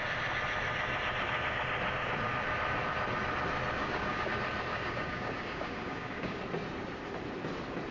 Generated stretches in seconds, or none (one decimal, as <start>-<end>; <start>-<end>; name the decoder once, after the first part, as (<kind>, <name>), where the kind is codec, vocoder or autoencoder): 3.8-4.3 (codec, DAC); 4.7-6.4